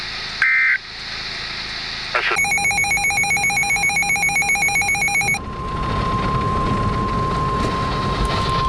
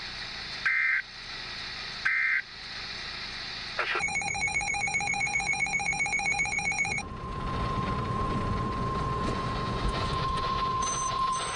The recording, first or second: first